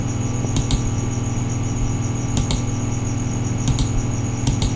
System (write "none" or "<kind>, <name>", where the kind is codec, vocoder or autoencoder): none